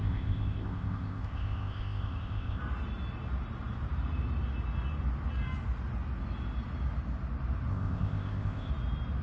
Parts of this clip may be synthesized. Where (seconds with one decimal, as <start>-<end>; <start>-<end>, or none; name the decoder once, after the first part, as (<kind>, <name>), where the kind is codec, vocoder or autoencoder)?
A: 0.0-2.6 (codec, ZipCodec); 7.7-8.7